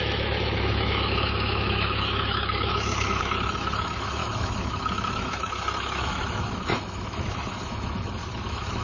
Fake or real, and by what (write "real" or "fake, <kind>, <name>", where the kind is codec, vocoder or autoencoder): fake, autoencoder, DAC-VAE